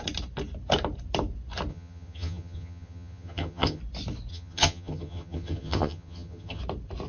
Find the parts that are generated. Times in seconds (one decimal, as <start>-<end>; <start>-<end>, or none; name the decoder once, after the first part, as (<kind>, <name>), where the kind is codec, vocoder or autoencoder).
1.7-3.8 (vocoder, HiFi-GAN); 4.3-6.6